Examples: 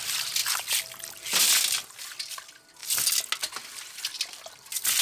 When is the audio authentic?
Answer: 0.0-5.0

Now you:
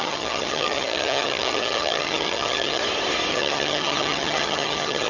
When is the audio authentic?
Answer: 2.8-3.3

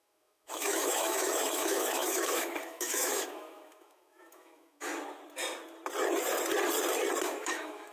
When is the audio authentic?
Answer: 4.9-7.3

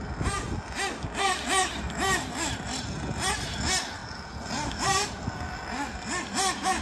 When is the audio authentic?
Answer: 0.0-6.8

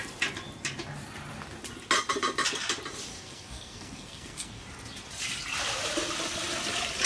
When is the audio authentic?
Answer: 0.0-3.1; 4.6-7.1

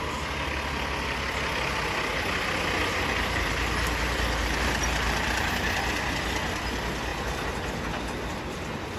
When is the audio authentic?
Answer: 0.0-2.9; 5.5-9.0

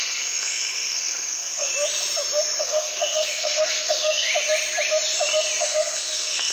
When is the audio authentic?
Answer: 1.7-2.6; 4.3-5.6

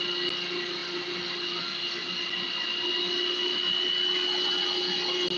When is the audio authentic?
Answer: 0.0-5.4